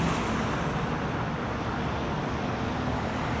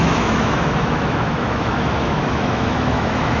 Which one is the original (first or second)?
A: first